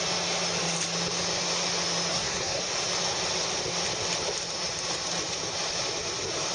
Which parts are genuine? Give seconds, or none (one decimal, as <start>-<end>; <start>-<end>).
0.0-2.1; 2.6-6.5